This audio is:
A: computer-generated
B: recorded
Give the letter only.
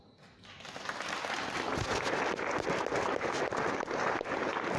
B